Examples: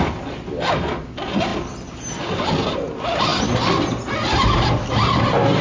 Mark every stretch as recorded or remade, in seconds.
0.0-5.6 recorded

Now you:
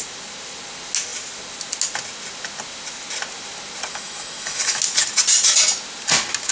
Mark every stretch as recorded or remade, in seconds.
0.0-3.9 recorded; 3.9-4.8 remade; 4.8-6.5 recorded

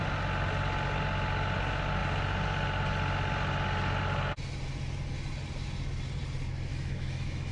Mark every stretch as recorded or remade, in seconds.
0.0-6.7 recorded; 6.7-7.5 remade

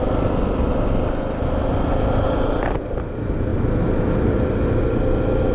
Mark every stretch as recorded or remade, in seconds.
0.0-5.5 recorded

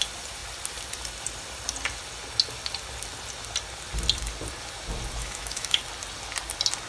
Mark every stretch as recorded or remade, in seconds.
0.0-5.2 recorded; 5.2-5.8 remade; 5.8-6.9 recorded

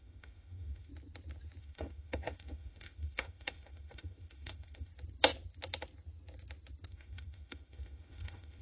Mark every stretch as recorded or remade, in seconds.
0.0-0.9 remade; 0.9-1.6 recorded; 1.6-4.9 remade; 4.9-6.9 recorded; 6.9-8.6 remade

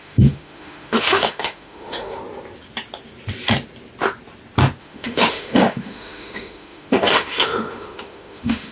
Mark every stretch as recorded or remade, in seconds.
0.0-2.2 remade; 2.2-4.8 recorded; 4.8-8.7 remade

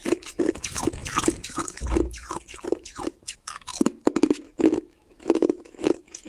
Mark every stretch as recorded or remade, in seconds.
0.0-6.3 remade